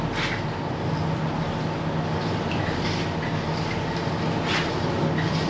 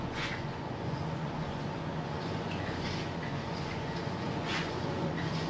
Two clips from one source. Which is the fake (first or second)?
second